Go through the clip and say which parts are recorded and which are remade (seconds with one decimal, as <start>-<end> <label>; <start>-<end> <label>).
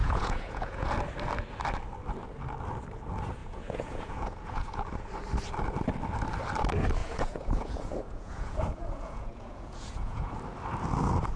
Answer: 0.0-0.9 remade; 0.9-3.4 recorded; 3.4-4.8 remade; 4.8-7.0 recorded; 7.0-10.3 remade; 10.3-11.4 recorded